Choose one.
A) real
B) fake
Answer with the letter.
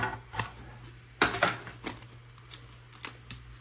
A